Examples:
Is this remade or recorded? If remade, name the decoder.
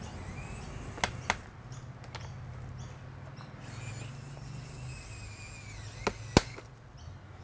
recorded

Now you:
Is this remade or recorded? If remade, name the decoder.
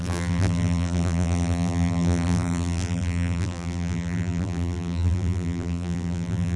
remade, vocoder, BigVGAN v2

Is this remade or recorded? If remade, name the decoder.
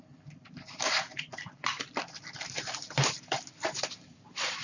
remade, vocoder, BigVGAN v2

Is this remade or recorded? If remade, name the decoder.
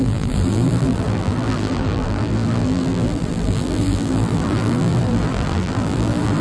remade, vocoder, BigVGAN v2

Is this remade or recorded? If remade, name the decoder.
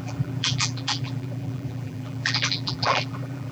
remade, vocoder, BigVGAN v2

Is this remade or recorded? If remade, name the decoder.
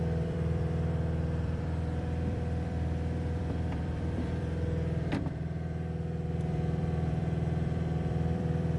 remade, vocoder, BigVGAN v2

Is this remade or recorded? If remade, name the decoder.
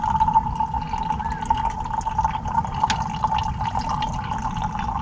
recorded